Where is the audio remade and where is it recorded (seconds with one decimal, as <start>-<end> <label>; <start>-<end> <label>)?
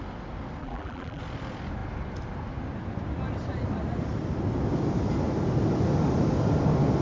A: 0.0-0.6 recorded; 0.6-1.2 remade; 1.2-7.0 recorded